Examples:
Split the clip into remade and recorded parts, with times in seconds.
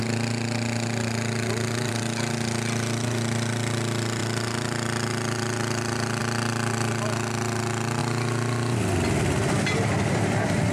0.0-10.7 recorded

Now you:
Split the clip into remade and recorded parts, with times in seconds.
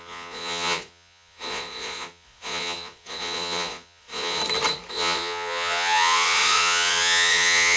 0.0-4.4 remade; 4.4-4.9 recorded; 4.9-7.8 remade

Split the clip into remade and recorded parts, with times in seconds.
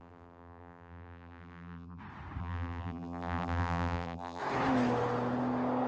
0.0-2.0 remade; 2.0-2.4 recorded; 2.4-4.4 remade; 4.4-5.9 recorded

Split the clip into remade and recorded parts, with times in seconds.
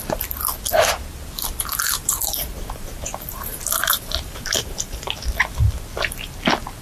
0.0-2.0 recorded; 2.0-5.1 remade; 5.1-6.8 recorded